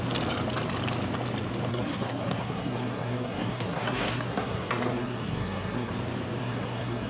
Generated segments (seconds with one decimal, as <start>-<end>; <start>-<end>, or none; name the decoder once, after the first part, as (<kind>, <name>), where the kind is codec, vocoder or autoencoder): 1.7-5.9 (codec, SNAC); 6.4-7.1